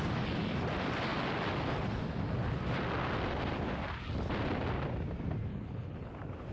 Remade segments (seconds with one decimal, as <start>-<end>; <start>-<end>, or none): 5.5-6.1